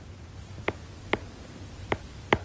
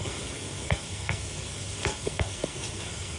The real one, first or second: first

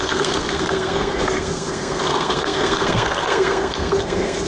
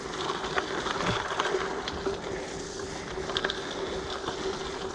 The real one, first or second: second